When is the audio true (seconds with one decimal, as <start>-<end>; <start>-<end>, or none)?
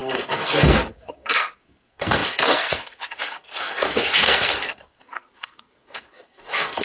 none